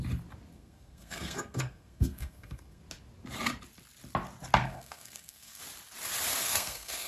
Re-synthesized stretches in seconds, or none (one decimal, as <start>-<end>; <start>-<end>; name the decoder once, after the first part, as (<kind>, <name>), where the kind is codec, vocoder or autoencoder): 0.5-2.8 (codec, SNAC); 4.6-5.6; 6.4-7.1